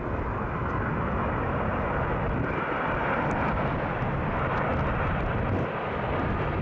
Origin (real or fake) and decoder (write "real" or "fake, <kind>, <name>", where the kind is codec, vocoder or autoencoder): real